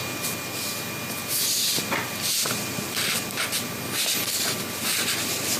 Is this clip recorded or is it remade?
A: recorded